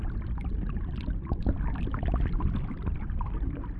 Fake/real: real